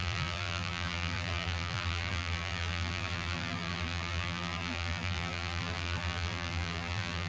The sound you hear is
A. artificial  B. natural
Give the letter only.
A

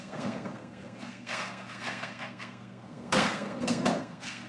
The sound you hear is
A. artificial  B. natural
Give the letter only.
A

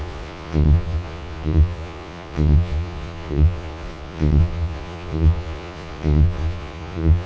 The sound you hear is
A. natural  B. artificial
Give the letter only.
B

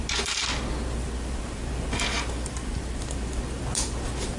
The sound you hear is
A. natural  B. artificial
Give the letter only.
A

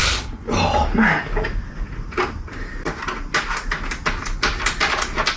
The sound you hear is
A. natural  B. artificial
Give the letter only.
A